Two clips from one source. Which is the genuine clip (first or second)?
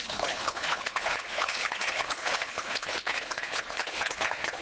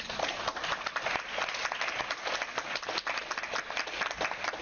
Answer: second